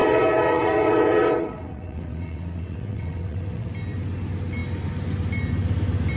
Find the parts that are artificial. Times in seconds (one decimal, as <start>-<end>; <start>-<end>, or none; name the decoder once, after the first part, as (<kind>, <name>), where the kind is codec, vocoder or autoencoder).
0.0-3.7 (vocoder, WaveNeXt)